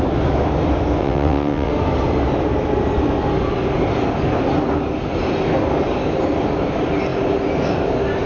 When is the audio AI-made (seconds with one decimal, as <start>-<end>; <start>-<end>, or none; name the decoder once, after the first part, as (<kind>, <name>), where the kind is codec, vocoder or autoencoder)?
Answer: 1.0-1.7 (vocoder, WaveNeXt)